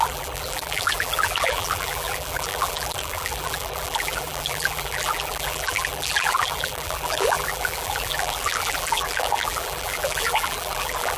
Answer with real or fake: fake